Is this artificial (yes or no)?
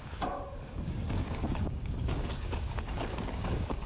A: yes